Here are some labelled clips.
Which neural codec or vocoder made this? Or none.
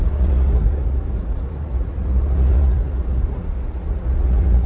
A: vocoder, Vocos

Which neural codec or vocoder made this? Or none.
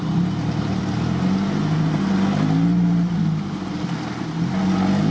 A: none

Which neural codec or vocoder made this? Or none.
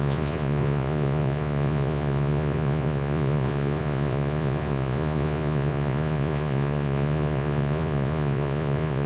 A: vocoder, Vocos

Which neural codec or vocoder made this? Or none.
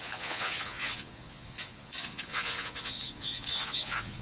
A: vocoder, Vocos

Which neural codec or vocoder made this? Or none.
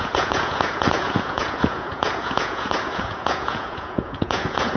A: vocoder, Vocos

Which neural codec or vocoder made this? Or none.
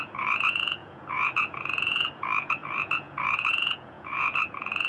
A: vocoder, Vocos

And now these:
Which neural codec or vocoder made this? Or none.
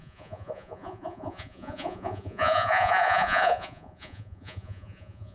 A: vocoder, Vocos